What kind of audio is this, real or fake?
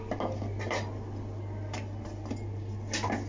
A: real